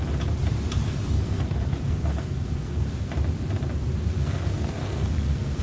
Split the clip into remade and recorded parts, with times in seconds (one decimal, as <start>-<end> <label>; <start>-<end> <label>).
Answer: 0.0-0.8 recorded; 0.8-3.1 remade; 3.1-4.1 recorded; 4.1-5.6 remade